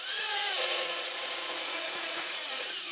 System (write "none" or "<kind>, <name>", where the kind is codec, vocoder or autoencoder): vocoder, Vocos